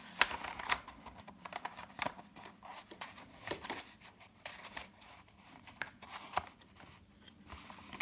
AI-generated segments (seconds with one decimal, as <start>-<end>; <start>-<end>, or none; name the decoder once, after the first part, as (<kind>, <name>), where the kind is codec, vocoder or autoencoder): 2.7-7.3 (vocoder, BigVGAN v2)